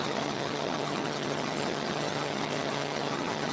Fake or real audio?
fake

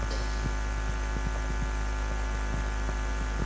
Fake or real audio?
real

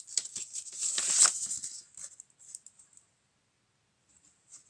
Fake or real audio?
real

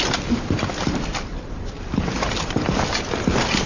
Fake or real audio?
real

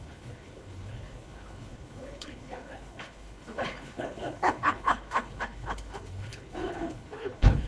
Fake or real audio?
fake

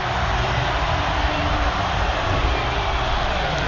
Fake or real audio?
real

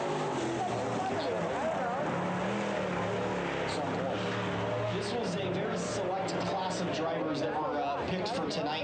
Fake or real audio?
real